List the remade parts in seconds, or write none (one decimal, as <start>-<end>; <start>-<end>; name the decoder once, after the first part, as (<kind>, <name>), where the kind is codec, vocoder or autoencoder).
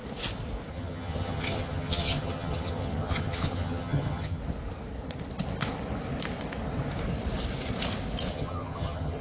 0.7-4.4 (vocoder, HiFi-GAN); 8.3-9.2